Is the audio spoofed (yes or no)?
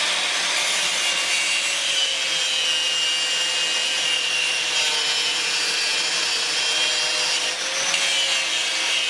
no